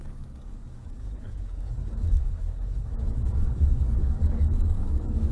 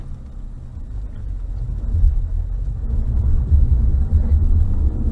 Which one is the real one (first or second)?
second